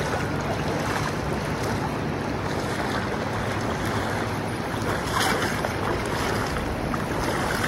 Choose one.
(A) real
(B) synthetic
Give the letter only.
A